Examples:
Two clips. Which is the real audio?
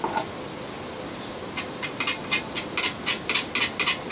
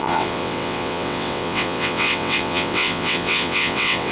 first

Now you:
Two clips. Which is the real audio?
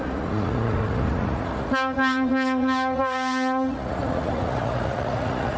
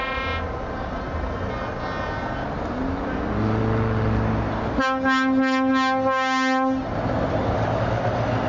second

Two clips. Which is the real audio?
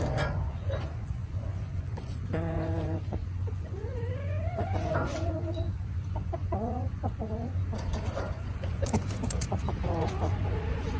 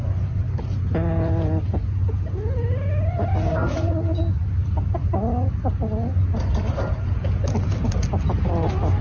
second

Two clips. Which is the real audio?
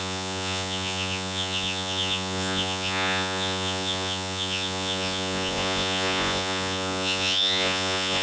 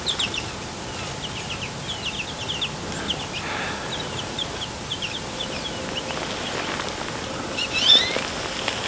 second